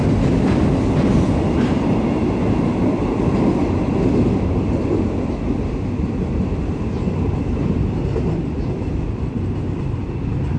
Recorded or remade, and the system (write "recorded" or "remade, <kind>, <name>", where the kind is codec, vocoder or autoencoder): recorded